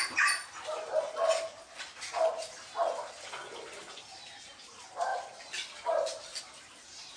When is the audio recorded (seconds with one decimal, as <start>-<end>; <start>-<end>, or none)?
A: 0.4-2.0; 5.1-6.4

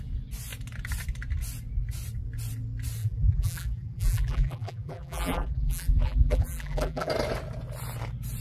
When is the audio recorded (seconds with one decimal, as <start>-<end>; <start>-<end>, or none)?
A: 0.0-3.0; 7.1-8.4

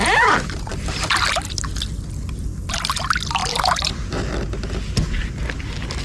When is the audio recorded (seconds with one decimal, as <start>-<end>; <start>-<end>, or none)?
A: 0.0-3.4; 4.2-6.0